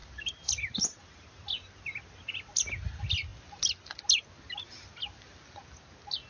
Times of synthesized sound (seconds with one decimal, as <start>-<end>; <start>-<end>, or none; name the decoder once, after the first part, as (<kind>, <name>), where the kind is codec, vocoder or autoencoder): none